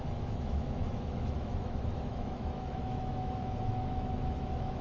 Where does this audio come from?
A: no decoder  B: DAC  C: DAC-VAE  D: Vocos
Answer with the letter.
C